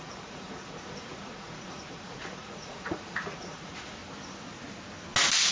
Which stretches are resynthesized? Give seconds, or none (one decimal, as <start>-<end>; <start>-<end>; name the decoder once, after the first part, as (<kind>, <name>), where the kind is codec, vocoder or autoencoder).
0.0-4.0 (vocoder, Vocos)